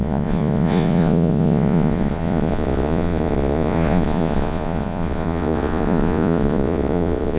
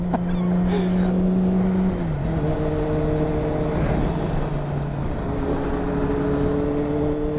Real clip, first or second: second